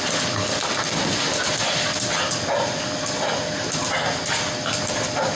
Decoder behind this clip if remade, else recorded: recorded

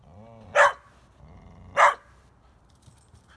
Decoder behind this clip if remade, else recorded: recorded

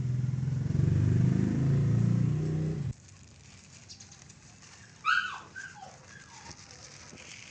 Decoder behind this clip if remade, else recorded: recorded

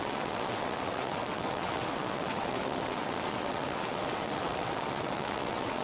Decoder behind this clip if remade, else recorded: remade, vocoder, WaveNeXt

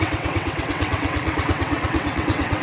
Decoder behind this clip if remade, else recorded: remade, vocoder, WaveNeXt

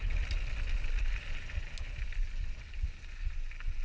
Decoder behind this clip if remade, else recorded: recorded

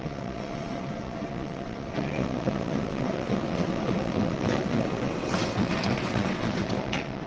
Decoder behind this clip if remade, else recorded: remade, vocoder, WaveNeXt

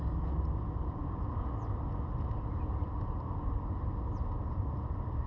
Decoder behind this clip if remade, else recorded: recorded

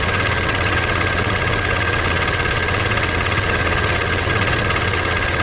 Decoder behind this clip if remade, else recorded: remade, vocoder, WaveNeXt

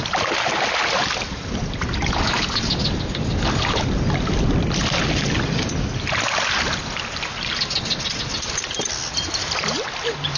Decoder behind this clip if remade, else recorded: recorded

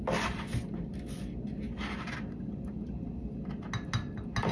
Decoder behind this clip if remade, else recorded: recorded